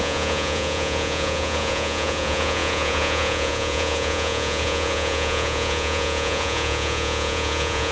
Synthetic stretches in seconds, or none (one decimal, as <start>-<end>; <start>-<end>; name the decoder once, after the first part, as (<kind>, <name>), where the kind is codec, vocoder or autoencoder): 0.0-7.9 (vocoder, Vocos)